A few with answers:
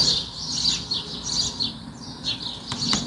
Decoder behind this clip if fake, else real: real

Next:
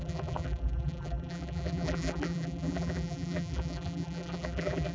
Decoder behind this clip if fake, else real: fake, vocoder, BigVGAN v2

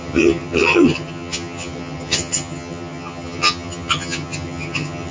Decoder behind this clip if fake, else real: fake, vocoder, HiFi-GAN